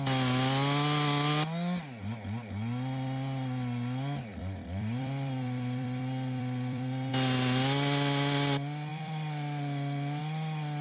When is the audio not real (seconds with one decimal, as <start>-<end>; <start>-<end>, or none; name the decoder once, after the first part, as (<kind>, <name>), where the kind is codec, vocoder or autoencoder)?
4.3-7.1 (vocoder, BigVGAN v2); 8.9-10.2